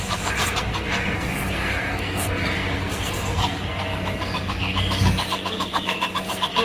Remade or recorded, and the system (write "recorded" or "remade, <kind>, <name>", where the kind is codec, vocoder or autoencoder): remade, codec, SNAC